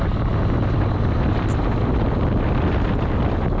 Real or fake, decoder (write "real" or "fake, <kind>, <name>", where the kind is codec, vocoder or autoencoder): real